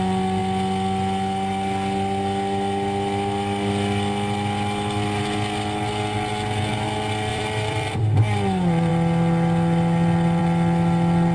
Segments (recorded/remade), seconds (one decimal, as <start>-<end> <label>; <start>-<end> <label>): 0.0-7.3 recorded; 7.3-8.0 remade; 8.0-11.3 recorded

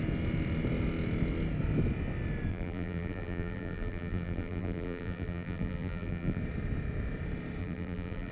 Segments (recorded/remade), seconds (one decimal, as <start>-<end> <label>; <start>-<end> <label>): 0.0-2.5 recorded; 2.5-6.4 remade; 6.4-7.6 recorded; 7.6-8.3 remade